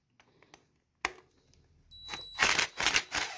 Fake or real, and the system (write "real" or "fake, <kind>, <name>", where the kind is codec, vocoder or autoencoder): real